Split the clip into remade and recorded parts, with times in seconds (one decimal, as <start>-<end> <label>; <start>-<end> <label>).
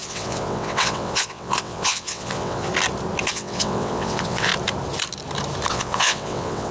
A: 0.0-2.7 remade; 2.7-3.3 recorded; 3.3-4.5 remade; 4.5-5.7 recorded; 5.7-6.7 remade